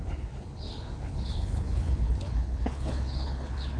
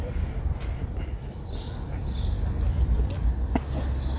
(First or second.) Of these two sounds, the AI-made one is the first